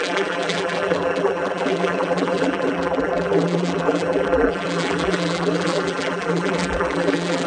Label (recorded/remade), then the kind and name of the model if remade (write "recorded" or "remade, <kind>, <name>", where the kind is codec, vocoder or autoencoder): remade, vocoder, BigVGAN v2